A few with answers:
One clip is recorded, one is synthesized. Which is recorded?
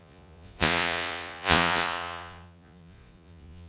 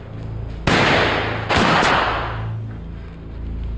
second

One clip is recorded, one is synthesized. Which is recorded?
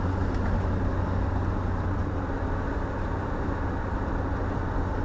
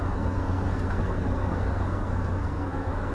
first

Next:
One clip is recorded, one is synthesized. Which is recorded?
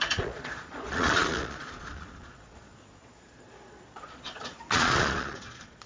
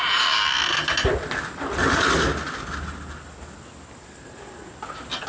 second